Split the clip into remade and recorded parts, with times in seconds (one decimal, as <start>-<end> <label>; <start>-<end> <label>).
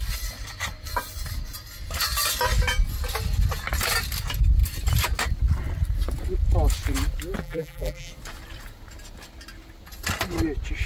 0.0-7.4 recorded; 7.4-8.1 remade; 8.1-10.9 recorded